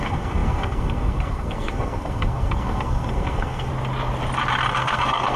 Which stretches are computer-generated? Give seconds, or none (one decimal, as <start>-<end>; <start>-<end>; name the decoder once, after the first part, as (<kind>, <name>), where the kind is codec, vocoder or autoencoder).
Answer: 0.0-3.7 (codec, SNAC); 4.7-5.4